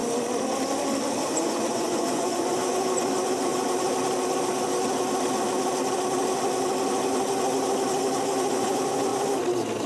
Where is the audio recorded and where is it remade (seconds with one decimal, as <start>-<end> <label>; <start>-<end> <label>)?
0.0-1.4 recorded; 1.4-3.5 remade; 3.5-8.5 recorded; 8.5-9.1 remade; 9.1-9.9 recorded